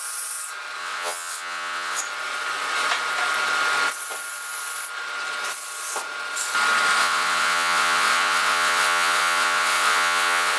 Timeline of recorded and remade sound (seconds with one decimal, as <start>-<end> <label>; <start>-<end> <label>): 0.0-0.8 recorded; 0.8-2.0 remade; 2.0-7.0 recorded; 7.0-10.6 remade